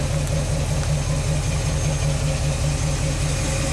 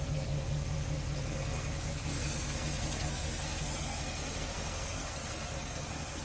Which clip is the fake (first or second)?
second